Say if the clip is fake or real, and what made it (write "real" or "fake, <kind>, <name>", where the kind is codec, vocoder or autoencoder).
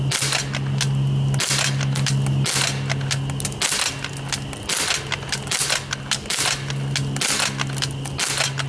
real